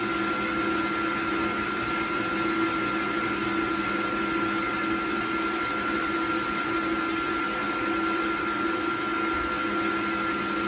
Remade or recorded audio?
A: recorded